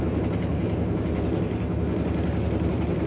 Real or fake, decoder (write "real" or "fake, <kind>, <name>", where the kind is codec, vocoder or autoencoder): real